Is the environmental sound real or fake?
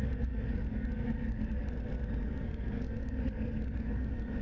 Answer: fake